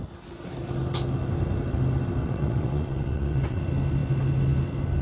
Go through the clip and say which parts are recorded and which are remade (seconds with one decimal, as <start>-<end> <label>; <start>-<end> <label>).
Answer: 0.0-2.2 recorded; 2.2-3.6 remade; 3.6-5.0 recorded